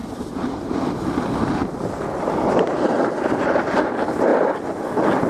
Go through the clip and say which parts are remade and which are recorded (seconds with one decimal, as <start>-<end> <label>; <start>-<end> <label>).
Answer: 0.0-0.8 remade; 0.8-5.3 recorded